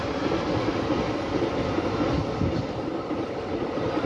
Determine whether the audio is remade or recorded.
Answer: recorded